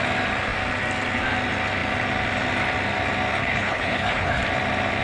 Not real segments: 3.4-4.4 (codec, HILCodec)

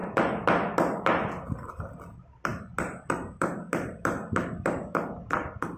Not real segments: none

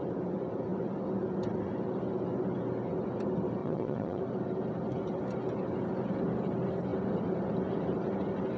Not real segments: 3.6-4.2 (vocoder, Vocos)

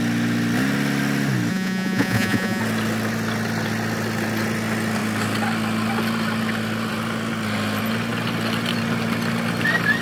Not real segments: 1.5-2.6 (vocoder, Vocos)

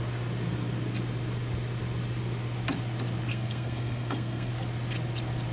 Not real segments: 3.3-4.5 (codec, SNAC)

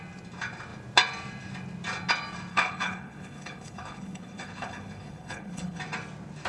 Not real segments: 2.5-5.8 (codec, HILCodec)